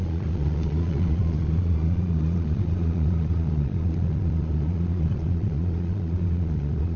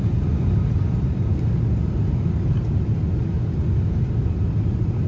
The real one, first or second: second